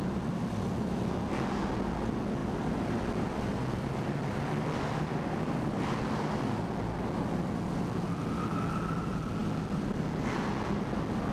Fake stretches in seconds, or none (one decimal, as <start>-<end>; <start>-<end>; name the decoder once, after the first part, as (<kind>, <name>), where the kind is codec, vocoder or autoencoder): 2.4-3.1 (vocoder, BigVGAN v2); 3.5-6.5